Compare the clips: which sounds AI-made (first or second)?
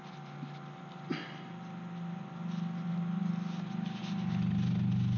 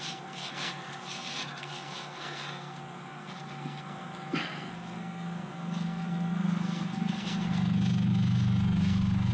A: second